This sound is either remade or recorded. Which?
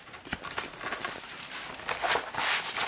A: recorded